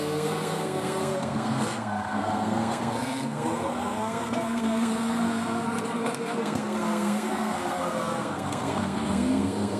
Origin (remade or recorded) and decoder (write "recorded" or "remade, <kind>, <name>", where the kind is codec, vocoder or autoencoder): remade, codec, SNAC